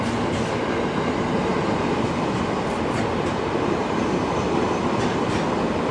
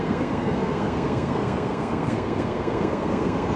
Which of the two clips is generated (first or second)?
second